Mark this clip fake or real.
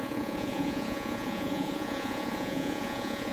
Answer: fake